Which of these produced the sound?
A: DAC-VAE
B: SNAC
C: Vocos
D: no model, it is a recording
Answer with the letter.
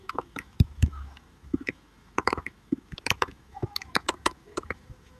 A